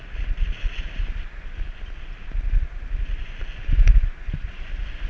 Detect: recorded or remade recorded